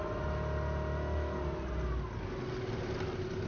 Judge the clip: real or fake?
real